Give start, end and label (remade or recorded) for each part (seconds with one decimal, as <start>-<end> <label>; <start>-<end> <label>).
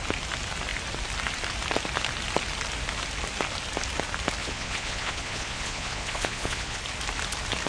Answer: 0.0-4.4 recorded; 4.4-6.8 remade; 6.8-7.7 recorded